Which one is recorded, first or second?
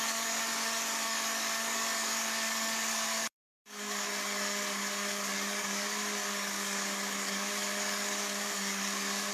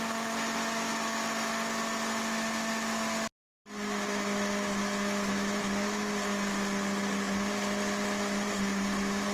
second